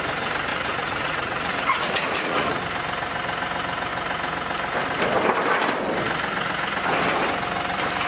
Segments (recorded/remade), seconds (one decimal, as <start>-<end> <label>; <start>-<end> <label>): 0.0-0.5 recorded; 0.5-2.6 remade; 2.6-8.1 recorded